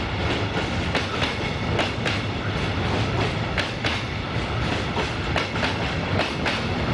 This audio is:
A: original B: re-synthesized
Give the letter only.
A